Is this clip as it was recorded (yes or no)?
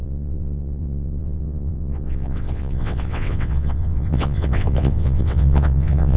no